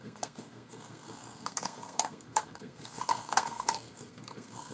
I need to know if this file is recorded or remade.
remade